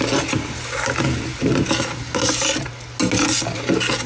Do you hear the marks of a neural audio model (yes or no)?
no